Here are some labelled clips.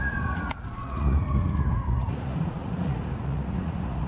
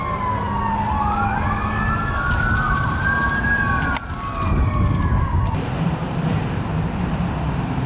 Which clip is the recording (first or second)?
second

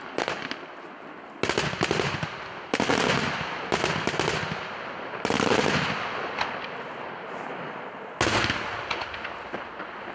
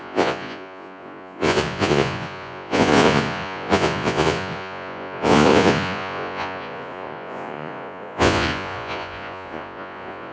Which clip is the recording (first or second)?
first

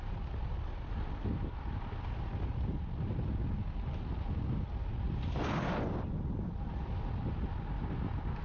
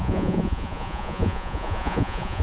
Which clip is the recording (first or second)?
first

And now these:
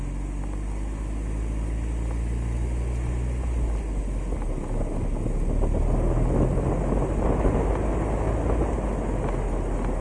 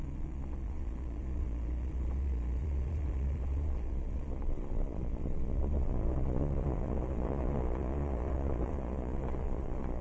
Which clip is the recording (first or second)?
first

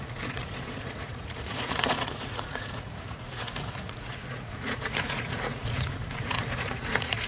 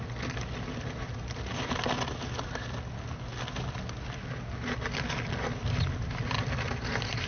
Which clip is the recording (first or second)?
second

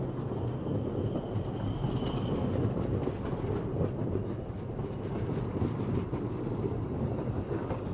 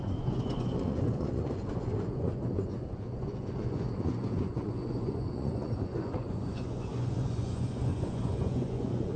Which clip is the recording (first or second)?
first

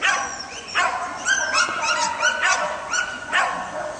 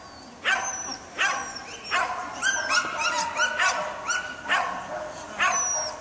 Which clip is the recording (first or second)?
second